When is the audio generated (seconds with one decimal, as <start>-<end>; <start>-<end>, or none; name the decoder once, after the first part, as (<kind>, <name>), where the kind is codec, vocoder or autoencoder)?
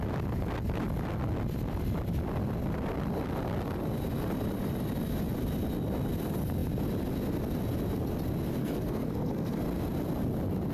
8.6-9.6 (codec, SNAC)